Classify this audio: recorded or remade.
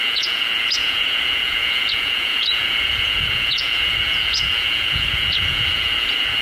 remade